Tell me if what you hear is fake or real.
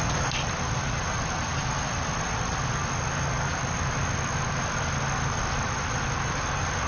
real